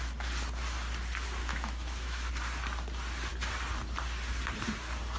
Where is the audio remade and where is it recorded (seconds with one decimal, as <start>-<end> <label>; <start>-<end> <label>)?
0.0-1.4 recorded; 1.4-2.3 remade; 2.3-5.2 recorded